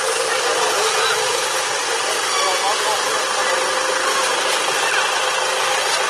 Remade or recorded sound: recorded